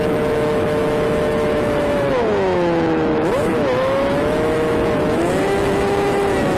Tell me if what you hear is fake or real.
fake